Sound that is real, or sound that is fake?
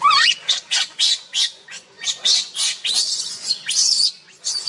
fake